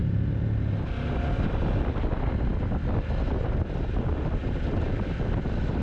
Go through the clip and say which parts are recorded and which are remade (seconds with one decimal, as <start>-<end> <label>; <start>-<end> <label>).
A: 0.0-5.8 recorded